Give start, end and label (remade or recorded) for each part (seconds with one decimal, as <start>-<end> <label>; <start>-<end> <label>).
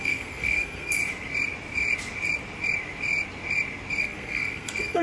0.0-1.0 remade; 1.0-4.0 recorded; 4.0-5.0 remade